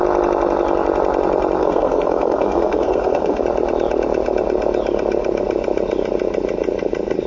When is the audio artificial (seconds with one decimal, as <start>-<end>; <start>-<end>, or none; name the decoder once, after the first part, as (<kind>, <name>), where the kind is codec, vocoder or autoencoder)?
1.6-3.4 (codec, SNAC)